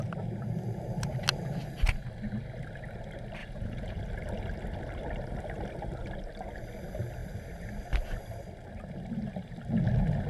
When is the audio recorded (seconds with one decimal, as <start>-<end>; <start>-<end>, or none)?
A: 0.0-3.4; 4.0-10.3